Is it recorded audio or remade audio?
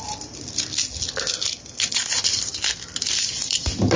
recorded